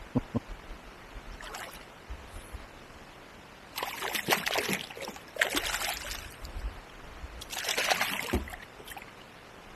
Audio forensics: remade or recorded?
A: recorded